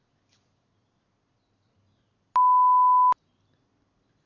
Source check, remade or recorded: recorded